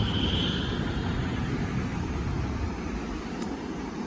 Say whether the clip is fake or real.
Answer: fake